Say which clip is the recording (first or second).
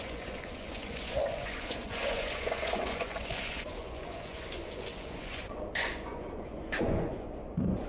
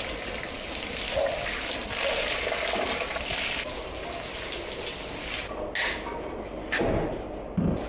second